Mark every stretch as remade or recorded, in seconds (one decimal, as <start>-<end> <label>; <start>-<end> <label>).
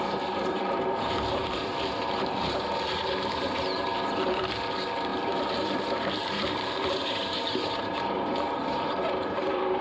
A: 0.0-9.8 remade